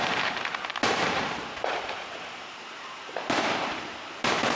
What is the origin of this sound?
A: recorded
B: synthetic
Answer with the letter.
B